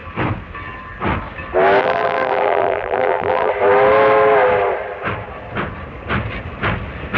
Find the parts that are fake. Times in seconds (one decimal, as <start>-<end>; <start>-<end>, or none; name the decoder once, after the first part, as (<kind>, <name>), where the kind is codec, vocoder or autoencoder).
1.8-3.5 (vocoder, BigVGAN v2)

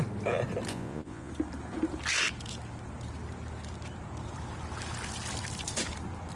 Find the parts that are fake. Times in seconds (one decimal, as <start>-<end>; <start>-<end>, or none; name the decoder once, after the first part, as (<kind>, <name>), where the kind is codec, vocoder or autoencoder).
0.7-1.3 (vocoder, Vocos)

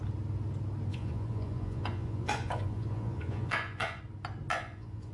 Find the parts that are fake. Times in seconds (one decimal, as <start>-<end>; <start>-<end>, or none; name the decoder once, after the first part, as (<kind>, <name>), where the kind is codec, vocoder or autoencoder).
0.9-4.0 (vocoder, Vocos); 4.5-5.1

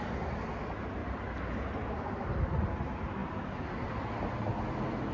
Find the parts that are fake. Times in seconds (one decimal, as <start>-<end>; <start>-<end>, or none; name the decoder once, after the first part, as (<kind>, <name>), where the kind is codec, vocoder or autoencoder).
1.0-1.9 (vocoder, BigVGAN v2)

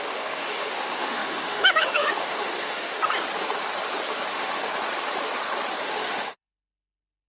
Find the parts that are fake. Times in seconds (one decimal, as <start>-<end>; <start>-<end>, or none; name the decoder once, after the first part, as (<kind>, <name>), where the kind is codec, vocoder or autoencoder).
0.0-2.9 (autoencoder, DAC-VAE); 4.3-4.7; 5.8-7.3

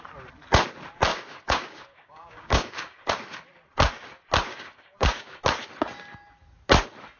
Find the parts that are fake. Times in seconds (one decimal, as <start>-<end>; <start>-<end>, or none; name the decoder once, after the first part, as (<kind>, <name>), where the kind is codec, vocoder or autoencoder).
1.1-3.1 (codec, DAC); 4.5-5.4